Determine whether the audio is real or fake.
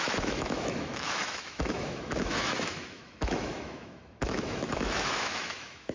fake